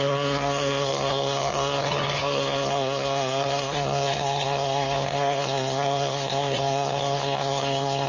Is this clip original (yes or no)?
no